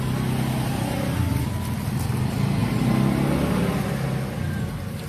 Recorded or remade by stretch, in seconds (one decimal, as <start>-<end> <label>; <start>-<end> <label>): 0.0-5.1 recorded